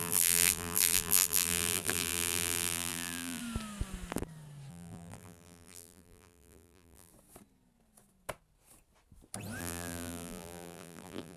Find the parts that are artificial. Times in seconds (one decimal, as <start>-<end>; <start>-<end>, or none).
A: 0.0-3.4; 4.7-7.1; 9.6-11.4